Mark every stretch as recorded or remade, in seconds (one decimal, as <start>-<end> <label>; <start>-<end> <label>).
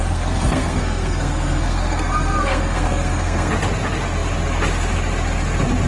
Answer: 0.0-3.5 remade; 3.5-5.9 recorded